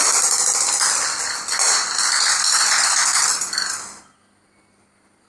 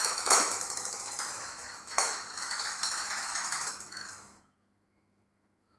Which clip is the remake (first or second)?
second